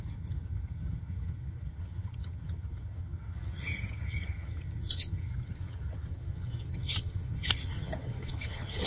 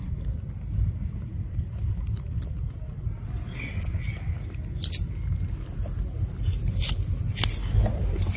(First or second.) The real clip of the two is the second